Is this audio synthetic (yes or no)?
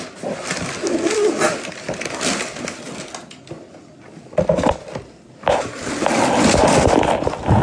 no